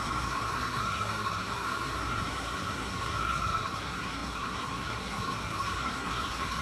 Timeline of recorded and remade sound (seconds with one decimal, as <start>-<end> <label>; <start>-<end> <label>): 0.0-6.6 remade

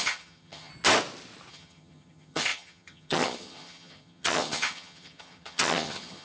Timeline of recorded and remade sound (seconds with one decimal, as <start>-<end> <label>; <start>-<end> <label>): 0.0-0.7 remade; 0.7-1.5 recorded; 1.5-6.2 remade

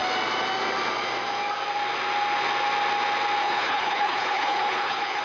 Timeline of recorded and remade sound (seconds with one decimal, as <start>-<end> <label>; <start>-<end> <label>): 0.0-3.4 recorded; 3.4-5.2 remade

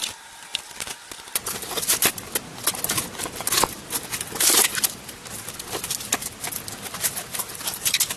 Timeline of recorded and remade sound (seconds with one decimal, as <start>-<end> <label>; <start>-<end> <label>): 0.0-8.2 recorded